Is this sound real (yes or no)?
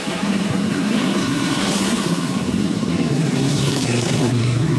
no